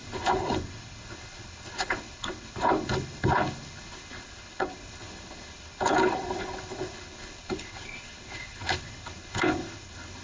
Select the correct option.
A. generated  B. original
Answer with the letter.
A